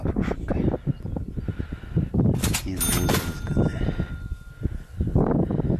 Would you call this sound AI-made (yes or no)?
no